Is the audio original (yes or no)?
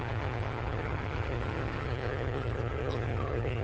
no